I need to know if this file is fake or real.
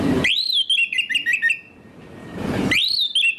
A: real